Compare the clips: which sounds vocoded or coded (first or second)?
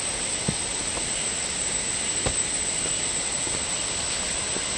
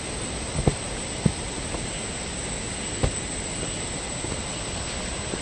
first